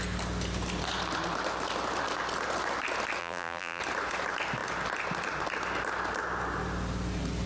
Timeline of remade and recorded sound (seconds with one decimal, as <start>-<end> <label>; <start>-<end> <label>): 0.0-3.2 recorded; 3.2-3.8 remade; 3.8-7.5 recorded

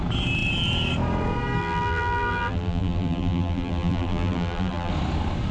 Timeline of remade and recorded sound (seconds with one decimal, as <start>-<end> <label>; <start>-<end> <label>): 0.0-1.6 recorded; 1.6-4.9 remade; 4.9-5.5 recorded

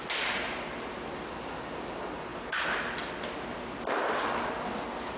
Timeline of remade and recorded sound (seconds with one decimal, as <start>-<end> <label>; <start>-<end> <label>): 0.0-2.3 recorded; 2.3-2.8 remade; 2.8-5.2 recorded

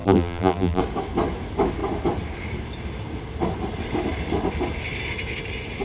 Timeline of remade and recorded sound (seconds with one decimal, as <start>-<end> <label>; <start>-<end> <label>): 0.0-0.8 remade; 0.8-5.8 recorded

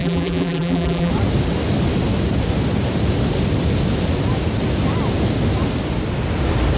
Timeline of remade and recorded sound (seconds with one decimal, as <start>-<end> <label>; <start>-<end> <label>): 0.0-1.1 remade; 1.1-6.8 recorded